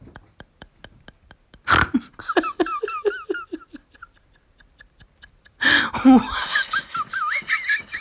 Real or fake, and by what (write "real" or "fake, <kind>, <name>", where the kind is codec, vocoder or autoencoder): real